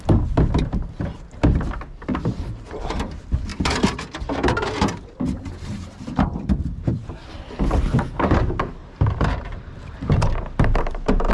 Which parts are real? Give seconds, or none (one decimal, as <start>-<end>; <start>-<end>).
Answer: 0.0-3.5; 6.6-8.8

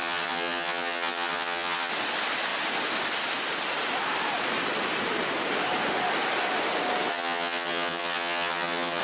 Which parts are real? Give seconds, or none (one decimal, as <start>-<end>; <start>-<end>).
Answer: 1.9-7.1

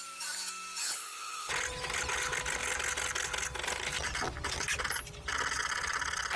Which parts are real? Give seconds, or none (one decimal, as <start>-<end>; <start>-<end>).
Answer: 0.0-0.8; 1.5-6.4

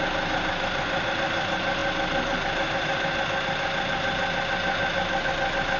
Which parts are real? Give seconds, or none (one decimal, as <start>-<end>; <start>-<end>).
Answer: 0.0-5.8

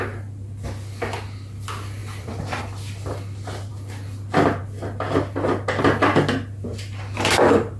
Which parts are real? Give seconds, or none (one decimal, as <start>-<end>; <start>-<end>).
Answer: 0.0-2.0; 2.6-6.7

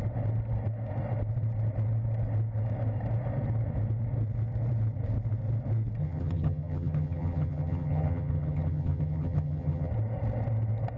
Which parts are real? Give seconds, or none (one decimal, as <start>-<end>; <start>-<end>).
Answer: 0.0-6.0; 9.9-11.0

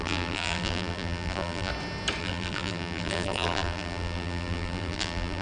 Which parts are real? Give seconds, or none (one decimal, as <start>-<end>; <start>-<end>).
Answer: 1.7-2.2